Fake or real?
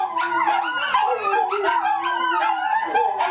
real